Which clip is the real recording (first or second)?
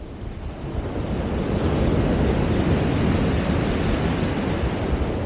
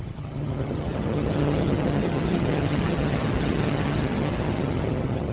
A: first